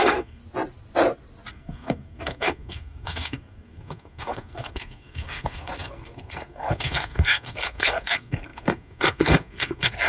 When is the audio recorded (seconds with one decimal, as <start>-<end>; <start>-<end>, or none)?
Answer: 0.4-1.5